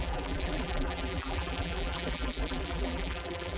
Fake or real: fake